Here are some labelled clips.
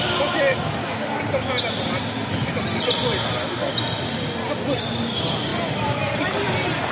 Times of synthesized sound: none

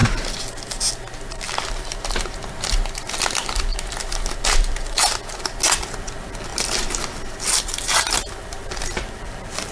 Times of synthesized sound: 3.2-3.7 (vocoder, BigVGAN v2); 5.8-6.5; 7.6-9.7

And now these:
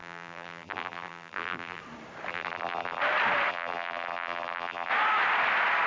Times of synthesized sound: 0.0-1.8 (vocoder, BigVGAN v2); 2.3-3.0; 3.5-4.9

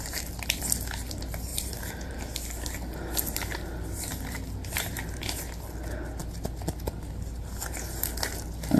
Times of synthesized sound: 1.5-2.1 (vocoder, BigVGAN v2)